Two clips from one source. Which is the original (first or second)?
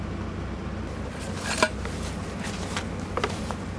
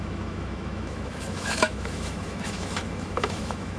first